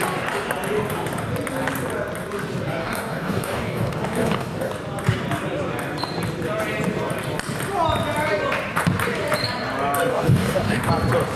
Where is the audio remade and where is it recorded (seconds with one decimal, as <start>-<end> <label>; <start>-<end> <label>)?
0.0-2.8 recorded; 2.8-4.7 remade; 4.7-10.1 recorded; 10.1-10.9 remade; 10.9-11.4 recorded